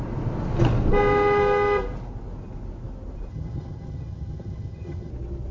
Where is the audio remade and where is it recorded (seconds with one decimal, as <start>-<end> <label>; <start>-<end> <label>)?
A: 0.0-3.3 recorded; 3.3-5.1 remade; 5.1-5.5 recorded

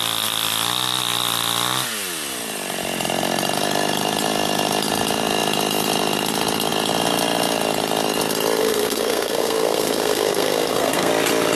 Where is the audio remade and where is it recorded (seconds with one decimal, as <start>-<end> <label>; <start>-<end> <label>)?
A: 0.0-8.6 recorded; 8.6-11.1 remade; 11.1-11.6 recorded

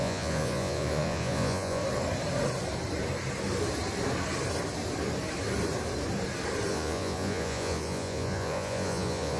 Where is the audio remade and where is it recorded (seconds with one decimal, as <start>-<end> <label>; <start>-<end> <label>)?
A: 0.0-1.8 remade; 1.8-6.7 recorded; 6.7-9.4 remade

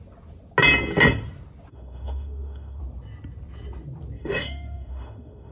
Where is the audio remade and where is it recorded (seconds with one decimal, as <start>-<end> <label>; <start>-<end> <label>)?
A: 0.0-1.7 recorded; 1.7-2.8 remade; 2.8-4.2 recorded; 4.2-5.5 remade

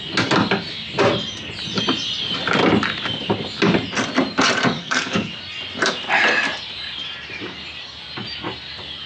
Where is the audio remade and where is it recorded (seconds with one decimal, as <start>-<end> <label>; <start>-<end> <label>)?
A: 0.0-4.8 recorded; 4.8-5.3 remade; 5.3-9.1 recorded

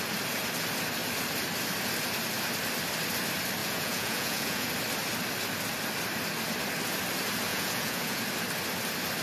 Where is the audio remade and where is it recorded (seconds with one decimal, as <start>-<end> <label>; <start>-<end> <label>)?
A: 0.0-3.6 recorded; 3.6-4.7 remade; 4.7-7.5 recorded; 7.5-8.2 remade; 8.2-9.2 recorded